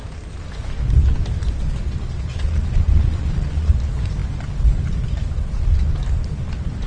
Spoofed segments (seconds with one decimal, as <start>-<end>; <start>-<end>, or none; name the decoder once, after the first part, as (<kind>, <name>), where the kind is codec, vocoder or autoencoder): 2.3-3.7 (vocoder, Vocos)